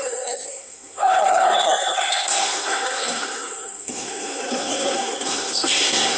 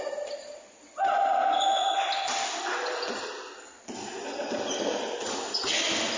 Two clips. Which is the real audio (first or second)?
second